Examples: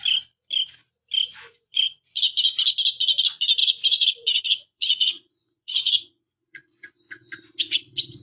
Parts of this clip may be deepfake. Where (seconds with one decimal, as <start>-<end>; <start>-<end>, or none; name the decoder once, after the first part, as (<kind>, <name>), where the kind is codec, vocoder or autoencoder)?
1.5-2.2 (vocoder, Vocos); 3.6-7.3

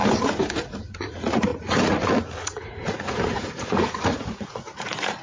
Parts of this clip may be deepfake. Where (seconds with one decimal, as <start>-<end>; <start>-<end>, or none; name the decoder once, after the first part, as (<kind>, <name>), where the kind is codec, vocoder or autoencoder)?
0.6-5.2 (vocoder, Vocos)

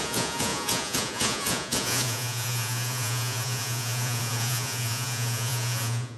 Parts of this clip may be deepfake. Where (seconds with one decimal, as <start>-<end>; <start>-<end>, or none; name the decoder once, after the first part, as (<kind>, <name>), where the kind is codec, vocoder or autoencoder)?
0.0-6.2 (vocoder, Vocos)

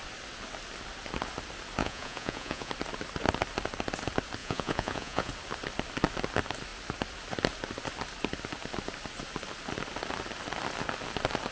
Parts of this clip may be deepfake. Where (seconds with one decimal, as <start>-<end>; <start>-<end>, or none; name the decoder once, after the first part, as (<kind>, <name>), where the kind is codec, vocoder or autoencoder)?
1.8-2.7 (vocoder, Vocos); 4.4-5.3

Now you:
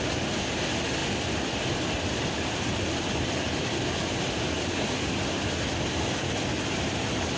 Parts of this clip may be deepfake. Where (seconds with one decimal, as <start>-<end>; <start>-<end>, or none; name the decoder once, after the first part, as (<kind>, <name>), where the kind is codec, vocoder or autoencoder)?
none

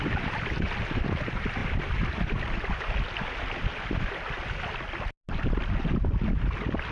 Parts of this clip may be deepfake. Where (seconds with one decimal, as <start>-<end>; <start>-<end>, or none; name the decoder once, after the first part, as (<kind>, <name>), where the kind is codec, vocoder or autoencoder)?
none

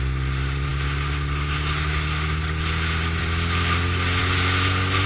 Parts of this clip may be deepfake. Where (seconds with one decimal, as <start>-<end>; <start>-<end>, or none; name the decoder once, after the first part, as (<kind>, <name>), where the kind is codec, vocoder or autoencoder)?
none